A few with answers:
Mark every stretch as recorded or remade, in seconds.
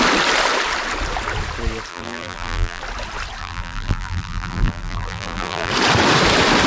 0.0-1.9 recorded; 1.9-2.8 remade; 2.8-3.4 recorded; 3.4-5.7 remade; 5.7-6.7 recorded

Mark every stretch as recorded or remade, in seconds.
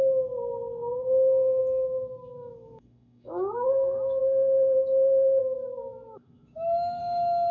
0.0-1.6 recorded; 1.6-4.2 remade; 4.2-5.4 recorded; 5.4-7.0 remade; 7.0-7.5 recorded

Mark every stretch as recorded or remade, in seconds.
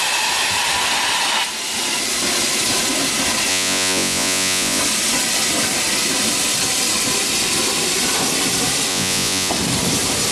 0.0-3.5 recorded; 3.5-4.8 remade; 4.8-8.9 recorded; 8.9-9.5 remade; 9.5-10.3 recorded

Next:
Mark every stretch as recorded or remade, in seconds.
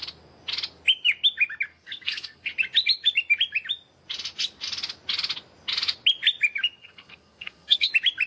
0.0-1.7 recorded; 1.7-2.5 remade; 2.5-6.8 recorded; 6.8-7.9 remade; 7.9-8.3 recorded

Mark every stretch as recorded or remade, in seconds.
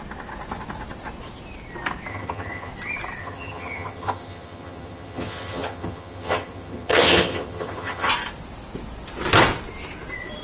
0.0-2.1 recorded; 2.1-2.7 remade; 2.7-3.2 recorded; 3.2-8.1 remade; 8.1-10.4 recorded